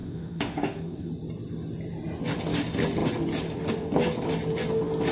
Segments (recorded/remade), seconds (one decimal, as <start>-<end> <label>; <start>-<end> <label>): 0.0-1.1 remade; 1.1-5.1 recorded

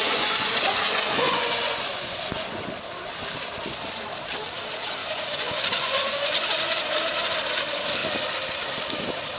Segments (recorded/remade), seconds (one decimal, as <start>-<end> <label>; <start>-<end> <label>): 0.0-2.6 remade; 2.6-5.0 recorded; 5.0-6.9 remade; 6.9-9.4 recorded